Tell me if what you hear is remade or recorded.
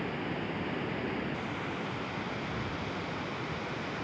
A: recorded